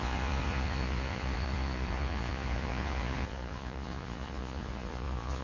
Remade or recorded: remade